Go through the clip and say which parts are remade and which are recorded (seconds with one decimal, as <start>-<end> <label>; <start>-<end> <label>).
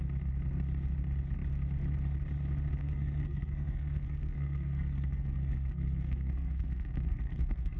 0.0-2.8 recorded; 2.8-7.8 remade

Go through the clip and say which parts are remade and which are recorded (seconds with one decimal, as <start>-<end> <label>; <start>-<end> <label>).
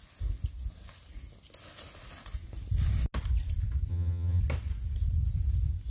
0.0-3.9 recorded; 3.9-4.4 remade; 4.4-5.9 recorded